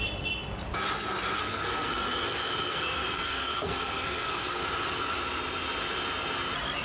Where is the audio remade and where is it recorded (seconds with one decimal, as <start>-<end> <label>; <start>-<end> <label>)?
0.0-1.4 recorded; 1.4-4.6 remade; 4.6-6.8 recorded